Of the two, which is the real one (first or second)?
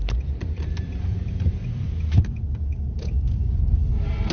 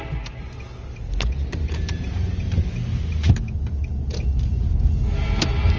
second